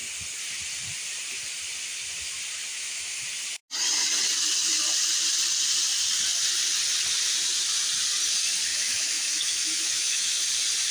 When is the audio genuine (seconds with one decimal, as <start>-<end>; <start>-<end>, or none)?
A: 0.0-2.7; 3.2-8.7; 10.4-10.9